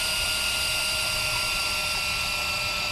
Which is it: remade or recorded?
recorded